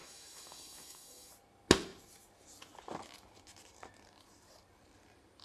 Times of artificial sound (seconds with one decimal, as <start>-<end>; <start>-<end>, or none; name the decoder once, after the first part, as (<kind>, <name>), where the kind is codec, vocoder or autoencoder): 0.0-1.3 (autoencoder, DAC-VAE)